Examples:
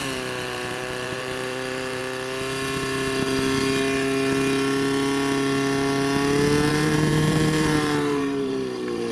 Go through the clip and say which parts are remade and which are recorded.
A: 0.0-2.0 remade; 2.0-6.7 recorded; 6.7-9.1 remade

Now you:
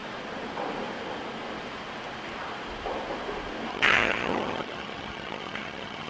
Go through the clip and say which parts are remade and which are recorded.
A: 0.0-3.7 recorded; 3.7-6.1 remade

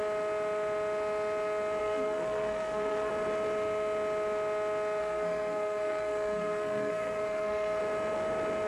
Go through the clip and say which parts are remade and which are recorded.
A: 0.0-1.8 recorded; 1.8-3.1 remade; 3.1-5.0 recorded; 5.0-7.8 remade; 7.8-8.7 recorded

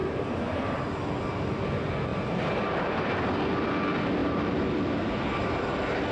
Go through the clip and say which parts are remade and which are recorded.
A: 0.0-0.8 remade; 0.8-2.1 recorded; 2.1-3.1 remade; 3.1-4.2 recorded; 4.2-4.8 remade; 4.8-6.1 recorded

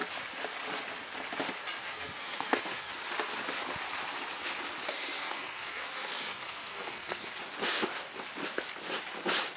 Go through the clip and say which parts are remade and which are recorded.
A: 0.0-1.8 recorded; 1.8-2.9 remade; 2.9-5.2 recorded; 5.2-7.2 remade; 7.2-9.6 recorded

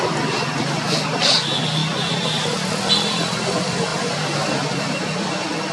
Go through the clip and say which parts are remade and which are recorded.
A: 0.0-1.8 remade; 1.8-2.7 recorded; 2.7-5.7 remade

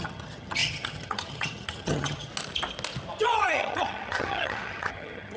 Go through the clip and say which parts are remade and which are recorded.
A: 0.0-2.3 remade; 2.3-3.2 recorded; 3.2-5.4 remade